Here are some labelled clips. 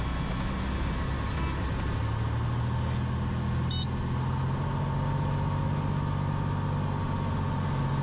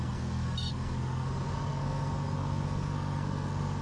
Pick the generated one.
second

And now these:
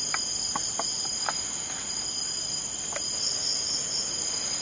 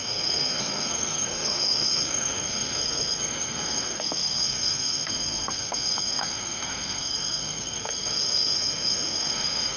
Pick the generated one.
second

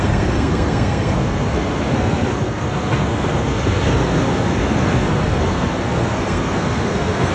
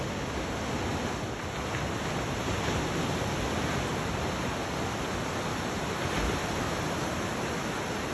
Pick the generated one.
first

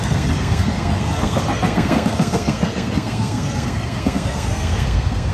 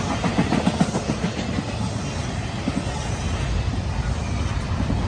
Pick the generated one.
first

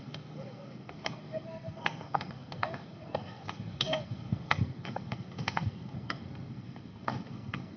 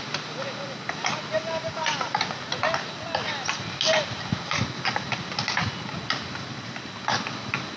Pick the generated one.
first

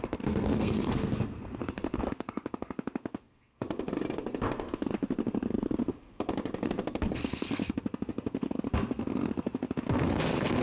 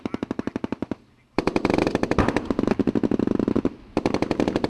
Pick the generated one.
first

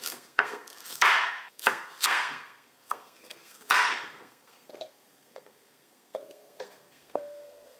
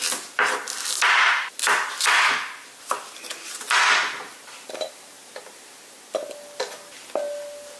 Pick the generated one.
first